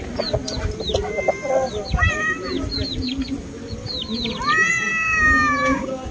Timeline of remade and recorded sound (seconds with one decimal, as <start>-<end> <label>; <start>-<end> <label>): 0.0-4.9 recorded; 4.9-6.1 remade